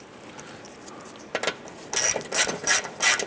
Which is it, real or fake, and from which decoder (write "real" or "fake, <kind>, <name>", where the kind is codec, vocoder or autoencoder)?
real